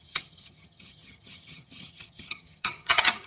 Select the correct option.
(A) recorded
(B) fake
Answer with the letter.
B